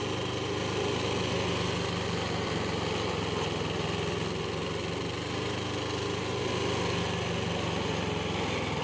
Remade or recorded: recorded